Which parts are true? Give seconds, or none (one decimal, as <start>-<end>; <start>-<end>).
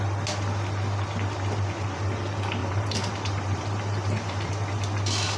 0.0-2.6; 4.5-5.4